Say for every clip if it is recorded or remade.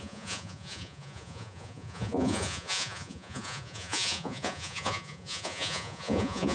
remade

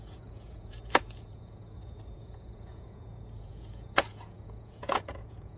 remade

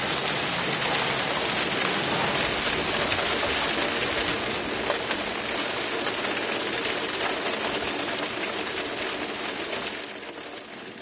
recorded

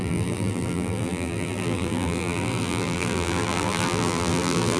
remade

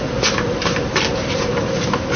recorded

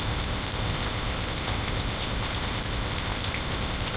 remade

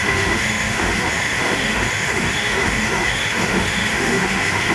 remade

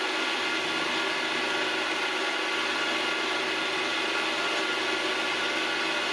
recorded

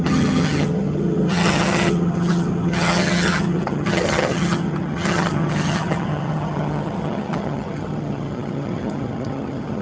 remade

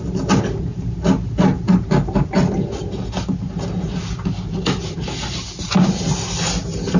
recorded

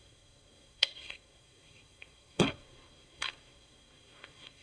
remade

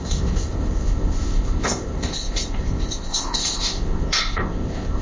remade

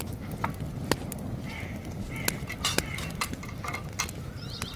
recorded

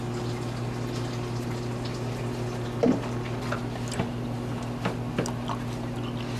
recorded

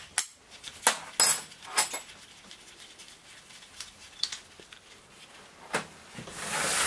recorded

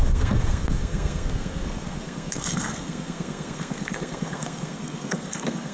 remade